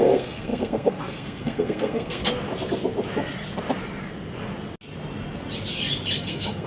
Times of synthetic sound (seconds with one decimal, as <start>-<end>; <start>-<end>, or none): 0.0-2.2; 6.2-6.7